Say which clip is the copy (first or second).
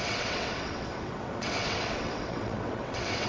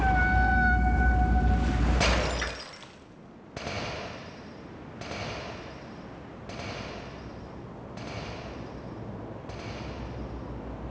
first